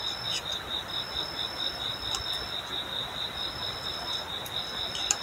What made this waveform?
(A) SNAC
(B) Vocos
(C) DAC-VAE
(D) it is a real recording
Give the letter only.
D